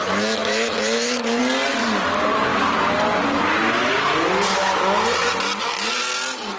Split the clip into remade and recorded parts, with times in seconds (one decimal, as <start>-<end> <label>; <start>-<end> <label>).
0.0-0.4 recorded; 0.4-1.4 remade; 1.4-6.6 recorded